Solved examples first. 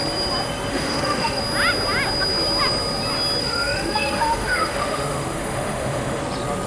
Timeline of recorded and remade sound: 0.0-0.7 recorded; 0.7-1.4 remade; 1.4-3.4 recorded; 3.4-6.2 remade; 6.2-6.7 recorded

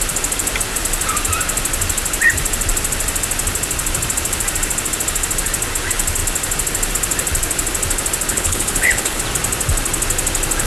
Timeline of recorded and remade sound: 0.0-8.3 recorded; 8.3-9.2 remade; 9.2-10.7 recorded